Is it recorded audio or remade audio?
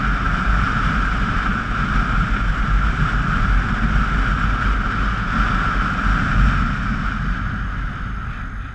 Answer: recorded